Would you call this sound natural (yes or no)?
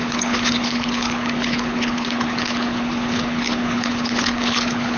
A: no